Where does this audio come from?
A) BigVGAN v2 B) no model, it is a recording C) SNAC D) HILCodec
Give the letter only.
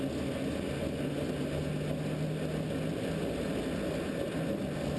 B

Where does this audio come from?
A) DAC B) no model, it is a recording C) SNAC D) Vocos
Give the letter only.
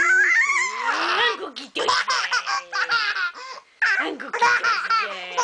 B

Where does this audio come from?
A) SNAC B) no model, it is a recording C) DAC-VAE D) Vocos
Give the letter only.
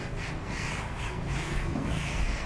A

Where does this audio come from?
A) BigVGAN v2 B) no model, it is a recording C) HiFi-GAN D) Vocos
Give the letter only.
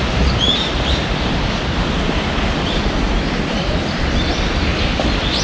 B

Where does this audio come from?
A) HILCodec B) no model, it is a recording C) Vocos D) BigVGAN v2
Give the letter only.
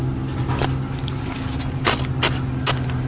B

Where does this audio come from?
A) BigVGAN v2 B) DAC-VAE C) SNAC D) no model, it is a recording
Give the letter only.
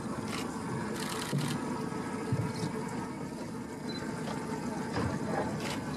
D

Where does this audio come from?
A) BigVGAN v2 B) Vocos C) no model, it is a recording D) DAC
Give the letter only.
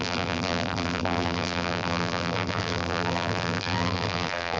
A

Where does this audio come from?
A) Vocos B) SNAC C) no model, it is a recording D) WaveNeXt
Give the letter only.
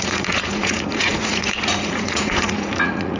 A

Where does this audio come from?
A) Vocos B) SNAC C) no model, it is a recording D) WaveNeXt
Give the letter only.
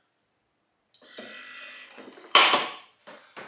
C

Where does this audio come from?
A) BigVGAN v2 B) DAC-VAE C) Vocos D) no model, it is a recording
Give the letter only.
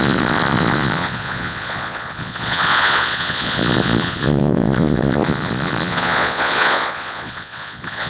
C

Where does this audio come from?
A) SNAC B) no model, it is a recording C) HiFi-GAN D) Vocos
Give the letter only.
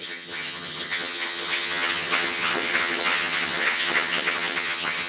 C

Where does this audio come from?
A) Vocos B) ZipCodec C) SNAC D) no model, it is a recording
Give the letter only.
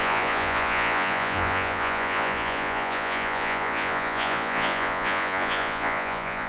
A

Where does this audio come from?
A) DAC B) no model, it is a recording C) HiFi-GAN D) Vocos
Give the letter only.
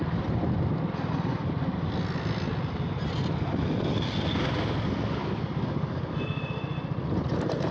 B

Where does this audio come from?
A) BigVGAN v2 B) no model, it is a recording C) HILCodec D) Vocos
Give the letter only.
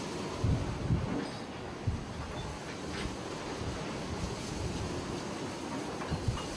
B